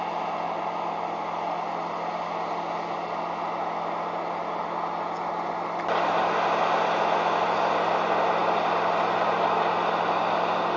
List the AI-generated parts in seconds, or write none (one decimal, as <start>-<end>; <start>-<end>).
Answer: none